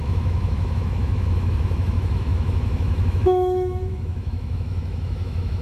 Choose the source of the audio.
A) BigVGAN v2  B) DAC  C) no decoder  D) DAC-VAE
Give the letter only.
D